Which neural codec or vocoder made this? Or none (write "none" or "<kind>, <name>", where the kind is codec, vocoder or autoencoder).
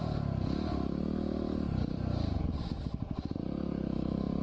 none